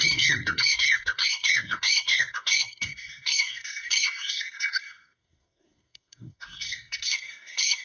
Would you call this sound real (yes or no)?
no